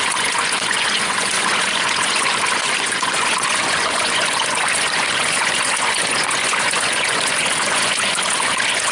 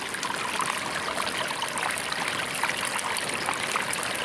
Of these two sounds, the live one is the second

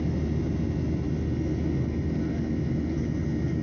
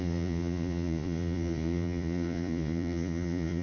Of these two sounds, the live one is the first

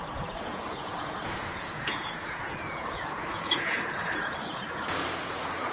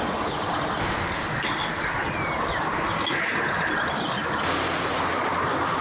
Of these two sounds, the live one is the second